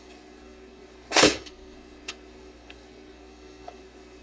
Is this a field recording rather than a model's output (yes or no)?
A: no